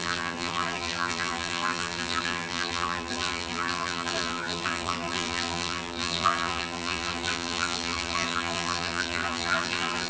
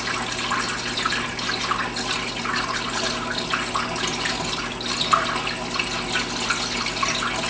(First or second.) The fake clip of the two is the first